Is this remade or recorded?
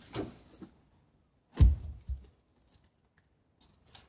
recorded